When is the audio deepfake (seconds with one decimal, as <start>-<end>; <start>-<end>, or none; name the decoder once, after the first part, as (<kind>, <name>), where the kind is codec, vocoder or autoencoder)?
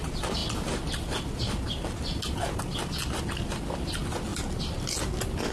none